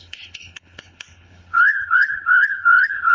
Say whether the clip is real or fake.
fake